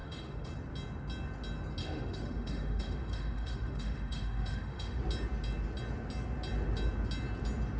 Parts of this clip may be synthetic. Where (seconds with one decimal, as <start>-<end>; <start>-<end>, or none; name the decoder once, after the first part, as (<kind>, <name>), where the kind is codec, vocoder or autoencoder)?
0.0-0.5 (autoencoder, DAC-VAE); 1.8-5.0